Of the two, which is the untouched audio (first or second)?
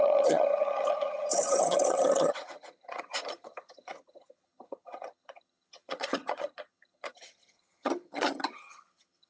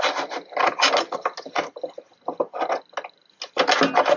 second